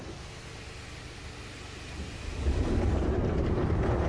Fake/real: real